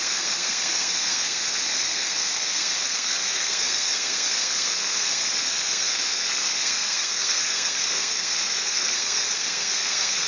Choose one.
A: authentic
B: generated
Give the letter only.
B